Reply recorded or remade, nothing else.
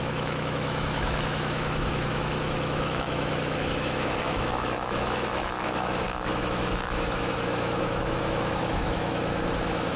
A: remade